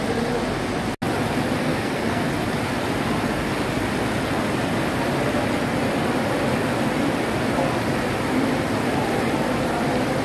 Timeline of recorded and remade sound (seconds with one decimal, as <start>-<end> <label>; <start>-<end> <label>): 0.0-1.6 recorded; 1.6-2.3 remade; 2.3-10.2 recorded

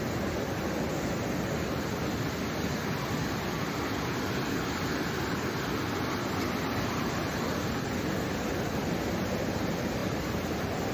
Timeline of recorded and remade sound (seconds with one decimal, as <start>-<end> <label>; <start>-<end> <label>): 0.0-10.9 recorded